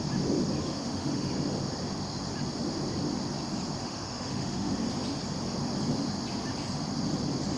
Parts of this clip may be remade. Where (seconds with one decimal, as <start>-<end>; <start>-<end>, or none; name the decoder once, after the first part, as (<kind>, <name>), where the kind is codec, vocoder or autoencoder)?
0.6-1.3 (autoencoder, DAC-VAE); 3.8-4.7

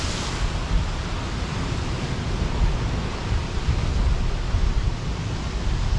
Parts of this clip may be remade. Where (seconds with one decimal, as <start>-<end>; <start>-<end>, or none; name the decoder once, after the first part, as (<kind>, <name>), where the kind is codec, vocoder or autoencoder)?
none

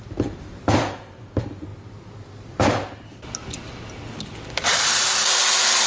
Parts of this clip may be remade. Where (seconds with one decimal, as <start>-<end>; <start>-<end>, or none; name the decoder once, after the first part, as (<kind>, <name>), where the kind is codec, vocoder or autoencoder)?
none